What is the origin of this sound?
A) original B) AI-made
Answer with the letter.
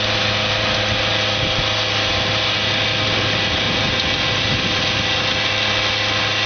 A